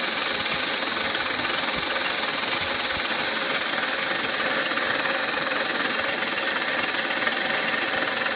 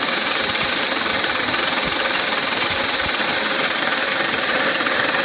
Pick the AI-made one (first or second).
second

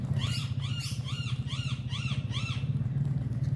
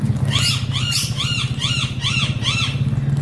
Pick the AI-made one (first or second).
first